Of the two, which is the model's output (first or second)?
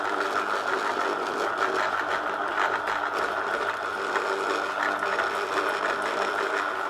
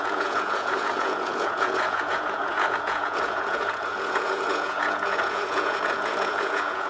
second